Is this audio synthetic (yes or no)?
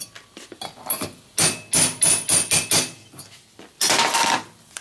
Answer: no